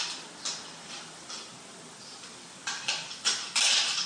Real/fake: fake